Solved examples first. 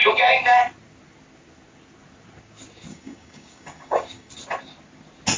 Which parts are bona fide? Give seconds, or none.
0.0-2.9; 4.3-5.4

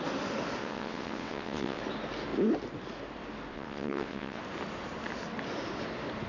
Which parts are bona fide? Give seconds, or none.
0.0-0.6; 1.8-3.5; 4.4-6.3

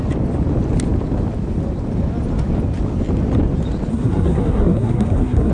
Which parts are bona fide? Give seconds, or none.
0.0-3.9

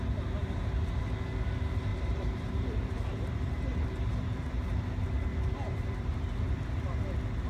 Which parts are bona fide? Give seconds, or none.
0.0-0.4; 1.0-1.9; 3.2-3.7; 4.6-5.3; 6.5-7.5

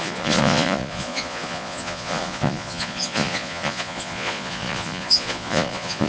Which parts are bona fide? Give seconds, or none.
none

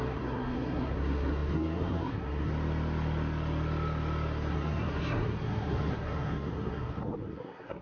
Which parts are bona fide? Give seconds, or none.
2.5-4.5

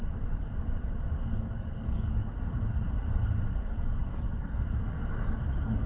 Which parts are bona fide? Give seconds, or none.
0.0-5.9